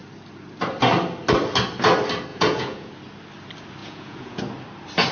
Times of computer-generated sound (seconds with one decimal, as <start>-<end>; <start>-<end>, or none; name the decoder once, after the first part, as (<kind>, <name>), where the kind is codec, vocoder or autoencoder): 2.3-2.9 (vocoder, Vocos); 3.8-4.4